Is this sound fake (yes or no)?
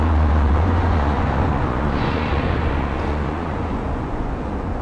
yes